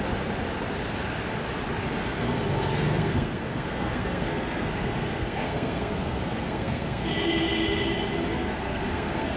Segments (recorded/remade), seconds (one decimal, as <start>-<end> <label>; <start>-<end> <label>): 0.0-2.0 recorded; 2.0-7.1 remade; 7.1-8.3 recorded; 8.3-9.4 remade